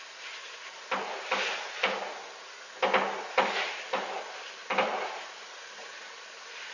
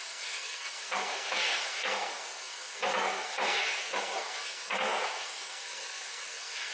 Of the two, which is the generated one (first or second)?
second